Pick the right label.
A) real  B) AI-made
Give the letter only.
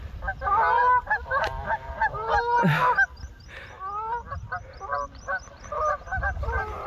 A